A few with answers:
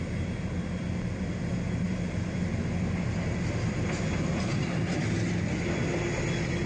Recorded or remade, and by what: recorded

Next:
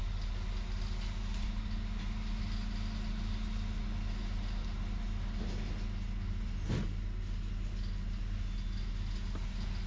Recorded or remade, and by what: recorded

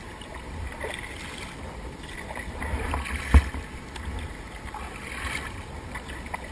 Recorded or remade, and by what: recorded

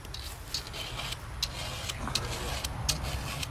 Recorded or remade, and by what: recorded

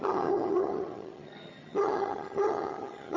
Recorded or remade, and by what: remade, vocoder, HiFi-GAN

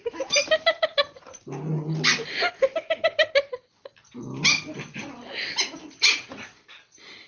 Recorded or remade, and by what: recorded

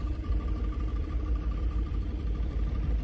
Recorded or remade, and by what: remade, vocoder, BigVGAN v2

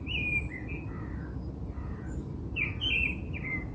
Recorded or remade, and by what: recorded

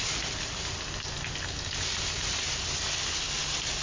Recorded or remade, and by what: recorded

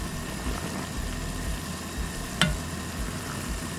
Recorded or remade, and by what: recorded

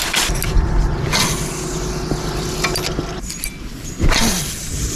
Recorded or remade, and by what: recorded